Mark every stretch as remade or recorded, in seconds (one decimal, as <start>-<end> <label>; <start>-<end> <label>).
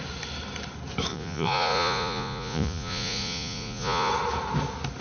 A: 0.0-1.1 recorded; 1.1-4.1 remade; 4.1-5.0 recorded